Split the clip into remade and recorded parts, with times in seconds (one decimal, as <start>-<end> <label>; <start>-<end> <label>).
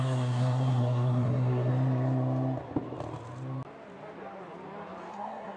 0.0-1.7 remade; 1.7-5.1 recorded; 5.1-5.6 remade